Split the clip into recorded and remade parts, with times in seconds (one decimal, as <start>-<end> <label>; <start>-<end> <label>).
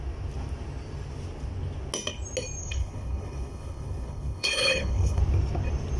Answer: 0.0-2.6 recorded; 2.6-5.2 remade; 5.2-6.0 recorded